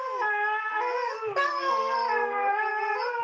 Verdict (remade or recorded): recorded